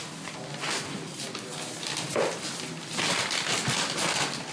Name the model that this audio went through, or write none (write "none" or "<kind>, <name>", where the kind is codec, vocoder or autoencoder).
none